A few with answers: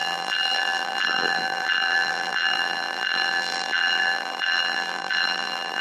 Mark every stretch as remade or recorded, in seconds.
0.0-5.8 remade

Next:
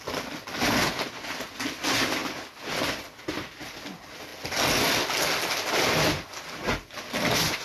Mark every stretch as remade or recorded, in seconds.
0.0-7.6 recorded

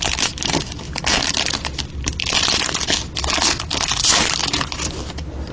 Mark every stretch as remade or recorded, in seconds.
0.0-5.5 recorded

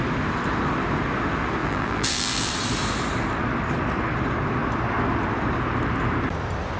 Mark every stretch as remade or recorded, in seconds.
0.0-1.6 recorded; 1.6-2.5 remade; 2.5-6.8 recorded

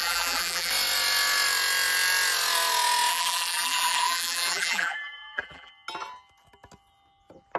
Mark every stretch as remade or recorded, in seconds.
0.0-0.7 remade; 0.7-3.1 recorded; 3.1-5.7 remade; 5.7-7.6 recorded

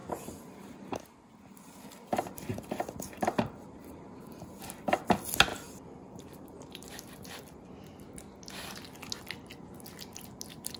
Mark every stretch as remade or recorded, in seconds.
0.0-1.0 remade; 1.0-2.5 recorded; 2.5-4.5 remade; 4.5-5.5 recorded; 5.5-7.8 remade; 7.8-10.8 recorded